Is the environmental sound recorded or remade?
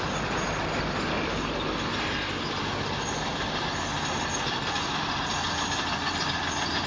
recorded